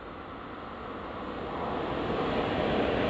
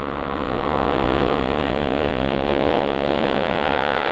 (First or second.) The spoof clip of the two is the second